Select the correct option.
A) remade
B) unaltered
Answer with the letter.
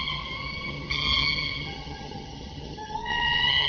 A